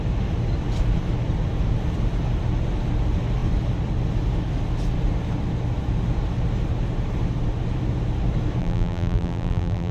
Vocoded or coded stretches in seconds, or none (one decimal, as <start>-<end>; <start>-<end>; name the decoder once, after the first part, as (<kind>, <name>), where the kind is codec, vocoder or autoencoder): 8.6-9.9 (vocoder, BigVGAN v2)

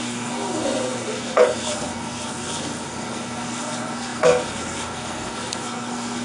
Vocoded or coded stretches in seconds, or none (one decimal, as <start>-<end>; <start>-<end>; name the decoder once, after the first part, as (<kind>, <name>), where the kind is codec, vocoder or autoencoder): 0.0-6.2 (codec, SNAC)